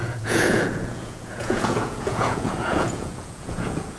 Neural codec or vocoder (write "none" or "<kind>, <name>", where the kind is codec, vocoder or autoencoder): vocoder, Vocos